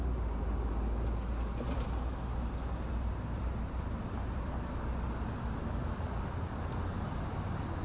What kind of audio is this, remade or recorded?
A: recorded